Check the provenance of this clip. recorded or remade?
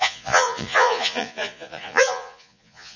remade